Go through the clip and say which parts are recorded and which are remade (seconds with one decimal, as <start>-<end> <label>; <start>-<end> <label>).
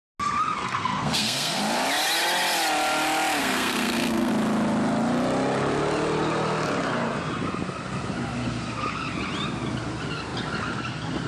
0.0-0.6 recorded; 0.6-1.6 remade; 1.6-3.4 recorded; 3.4-4.3 remade; 4.3-11.3 recorded